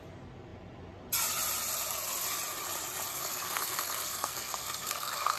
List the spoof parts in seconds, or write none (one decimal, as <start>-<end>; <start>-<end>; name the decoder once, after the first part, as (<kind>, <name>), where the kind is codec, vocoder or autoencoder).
3.1-5.4 (codec, SNAC)